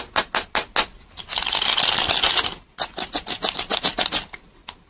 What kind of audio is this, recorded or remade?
recorded